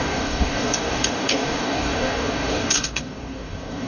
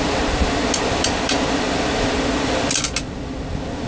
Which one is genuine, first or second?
second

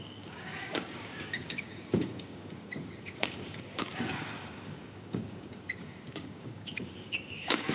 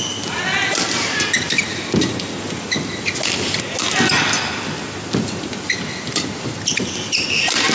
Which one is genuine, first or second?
second